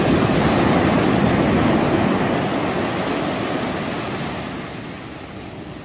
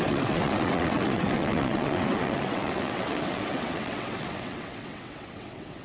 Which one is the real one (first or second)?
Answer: first